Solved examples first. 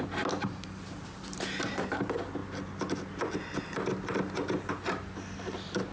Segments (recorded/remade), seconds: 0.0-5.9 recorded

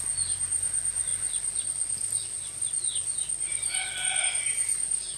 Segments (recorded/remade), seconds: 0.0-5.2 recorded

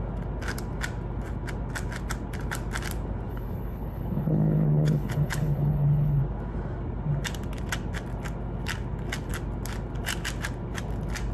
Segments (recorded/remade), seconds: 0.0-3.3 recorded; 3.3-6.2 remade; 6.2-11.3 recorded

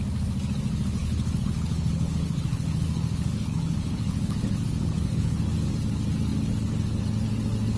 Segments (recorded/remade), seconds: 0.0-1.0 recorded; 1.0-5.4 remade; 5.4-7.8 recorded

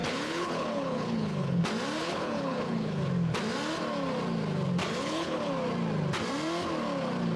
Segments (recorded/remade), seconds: 0.0-1.6 remade; 1.6-2.0 recorded; 2.0-3.0 remade; 3.0-4.8 recorded; 4.8-5.5 remade; 5.5-7.4 recorded

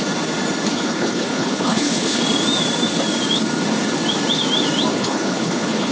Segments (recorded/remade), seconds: 0.0-0.7 recorded; 0.7-2.2 remade; 2.2-4.9 recorded; 4.9-5.9 remade